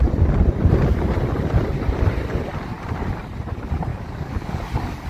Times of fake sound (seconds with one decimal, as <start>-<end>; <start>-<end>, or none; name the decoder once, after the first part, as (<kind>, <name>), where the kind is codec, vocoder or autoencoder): 3.9-4.6 (codec, DAC)